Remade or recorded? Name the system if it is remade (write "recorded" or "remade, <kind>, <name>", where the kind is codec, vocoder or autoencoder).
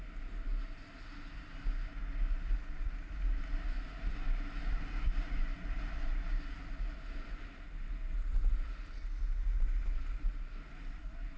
recorded